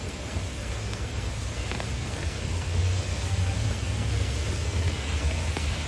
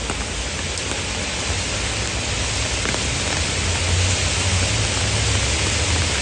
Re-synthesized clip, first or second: first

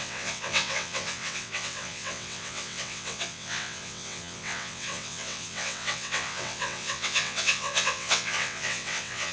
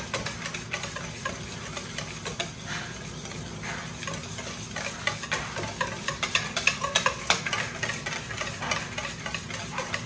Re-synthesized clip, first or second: first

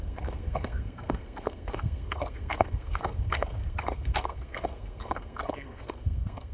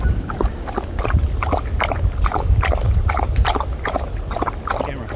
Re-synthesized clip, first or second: first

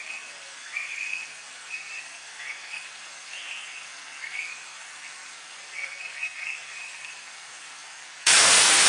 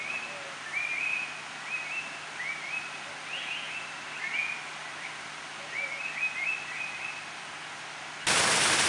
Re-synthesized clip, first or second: first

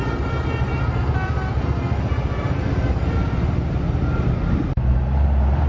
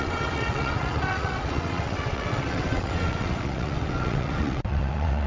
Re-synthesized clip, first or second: second